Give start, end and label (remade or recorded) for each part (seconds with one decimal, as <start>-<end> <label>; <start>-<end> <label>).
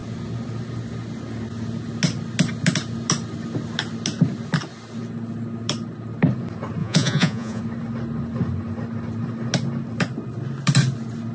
0.0-6.8 recorded; 6.8-7.6 remade; 7.6-11.3 recorded